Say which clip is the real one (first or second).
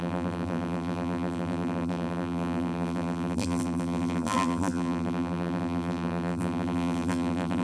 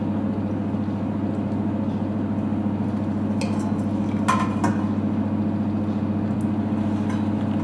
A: second